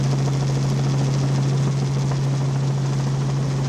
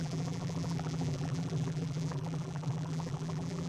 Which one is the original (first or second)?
first